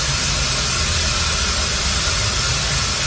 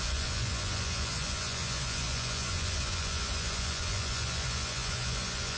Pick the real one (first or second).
first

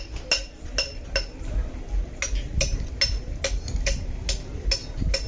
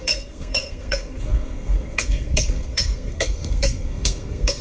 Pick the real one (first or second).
first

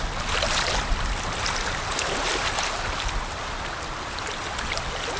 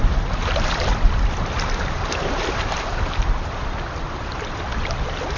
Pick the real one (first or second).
first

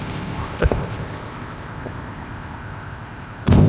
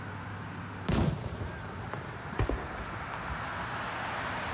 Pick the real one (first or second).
second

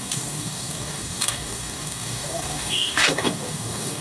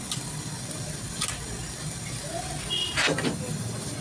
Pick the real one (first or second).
second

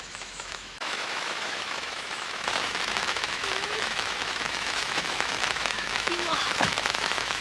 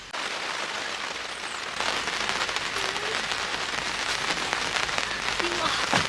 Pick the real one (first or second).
second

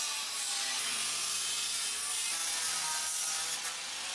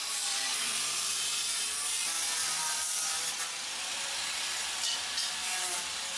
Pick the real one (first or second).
first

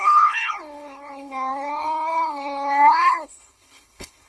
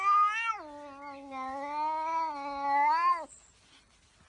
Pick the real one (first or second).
second